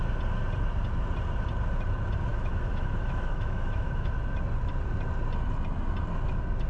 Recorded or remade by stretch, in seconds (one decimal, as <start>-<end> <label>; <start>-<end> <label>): 0.0-2.3 recorded; 2.3-4.1 remade; 4.1-6.7 recorded